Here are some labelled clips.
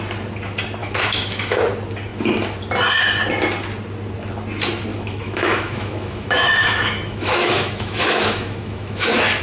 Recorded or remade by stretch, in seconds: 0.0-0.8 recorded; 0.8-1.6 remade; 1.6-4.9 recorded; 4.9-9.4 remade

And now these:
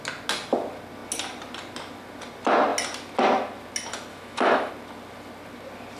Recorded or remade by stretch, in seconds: 0.0-4.1 recorded; 4.1-4.7 remade; 4.7-6.0 recorded

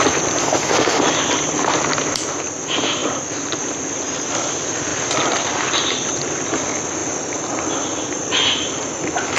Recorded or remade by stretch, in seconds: 0.0-0.4 recorded; 0.4-1.0 remade; 1.0-9.4 recorded

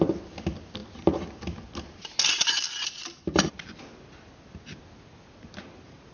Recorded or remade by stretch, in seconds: 0.0-6.1 recorded

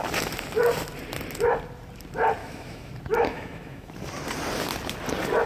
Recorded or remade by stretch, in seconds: 0.0-2.4 recorded; 2.4-2.9 remade; 2.9-3.3 recorded; 3.3-3.9 remade; 3.9-5.5 recorded

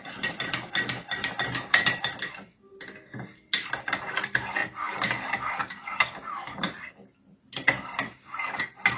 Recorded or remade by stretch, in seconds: 0.0-9.0 recorded

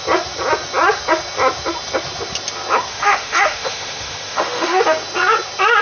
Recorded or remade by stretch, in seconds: 0.0-2.9 recorded; 2.9-4.8 remade; 4.8-5.8 recorded

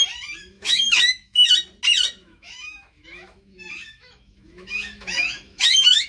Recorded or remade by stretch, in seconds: 0.0-0.4 recorded; 0.4-1.5 remade; 1.5-2.2 recorded; 2.2-6.1 remade